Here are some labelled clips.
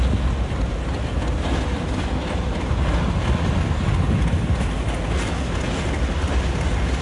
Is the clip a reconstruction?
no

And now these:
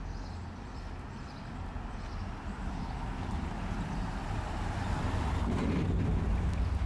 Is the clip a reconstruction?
no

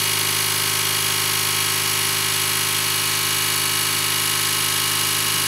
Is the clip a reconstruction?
no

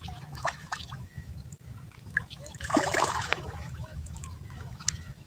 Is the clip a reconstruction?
yes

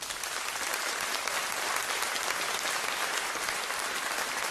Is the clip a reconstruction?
no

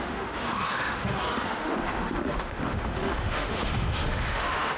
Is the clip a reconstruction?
yes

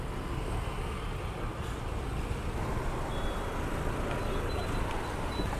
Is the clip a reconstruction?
no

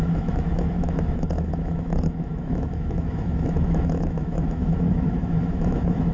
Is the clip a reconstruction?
yes